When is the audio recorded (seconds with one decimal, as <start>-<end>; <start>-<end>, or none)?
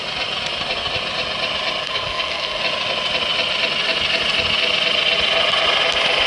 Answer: 0.0-1.8; 2.6-6.3